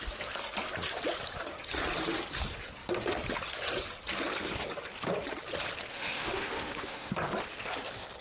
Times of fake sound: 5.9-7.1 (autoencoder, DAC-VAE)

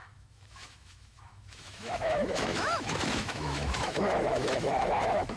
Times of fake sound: 0.0-5.4 (autoencoder, DAC-VAE)

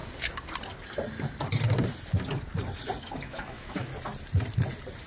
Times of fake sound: 3.0-3.9 (autoencoder, DAC-VAE)

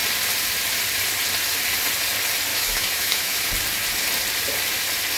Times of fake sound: 2.5-3.5 (autoencoder, DAC-VAE)